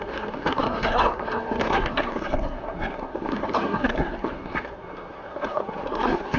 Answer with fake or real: fake